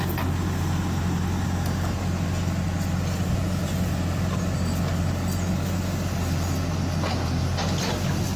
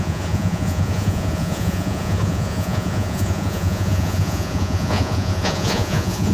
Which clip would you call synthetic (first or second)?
second